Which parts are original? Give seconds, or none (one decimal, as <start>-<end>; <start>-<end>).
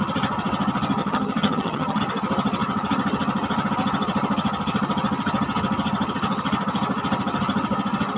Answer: 0.0-1.0; 2.0-8.2